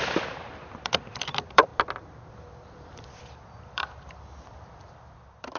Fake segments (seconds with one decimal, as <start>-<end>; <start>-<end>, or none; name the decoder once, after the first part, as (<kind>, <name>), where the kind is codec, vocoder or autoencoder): 0.0-1.7 (vocoder, BigVGAN v2); 2.3-5.6